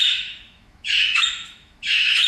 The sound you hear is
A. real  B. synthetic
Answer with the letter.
B